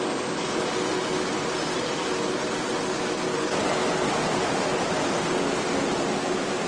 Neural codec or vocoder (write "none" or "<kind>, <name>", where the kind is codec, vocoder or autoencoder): none